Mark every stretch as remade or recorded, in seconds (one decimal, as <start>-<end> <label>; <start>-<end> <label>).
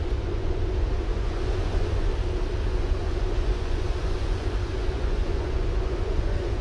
0.0-2.1 remade; 2.1-2.7 recorded; 2.7-6.6 remade